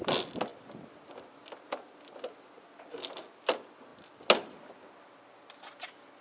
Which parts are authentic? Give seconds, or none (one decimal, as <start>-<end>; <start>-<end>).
0.0-6.2